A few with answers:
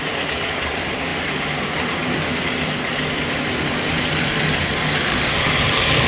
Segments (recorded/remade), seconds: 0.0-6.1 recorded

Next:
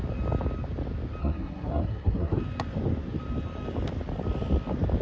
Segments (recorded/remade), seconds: 0.0-1.2 recorded; 1.2-2.4 remade; 2.4-5.0 recorded